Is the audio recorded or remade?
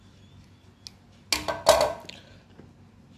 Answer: recorded